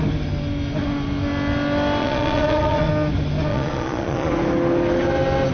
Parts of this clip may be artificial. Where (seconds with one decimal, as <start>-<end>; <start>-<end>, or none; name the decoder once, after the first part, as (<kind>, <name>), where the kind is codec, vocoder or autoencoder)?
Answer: 2.0-2.9 (vocoder, Vocos); 3.5-4.3